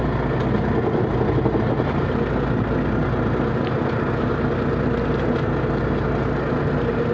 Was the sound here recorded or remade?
recorded